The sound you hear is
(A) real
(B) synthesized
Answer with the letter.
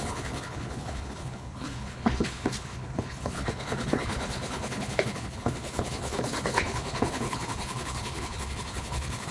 B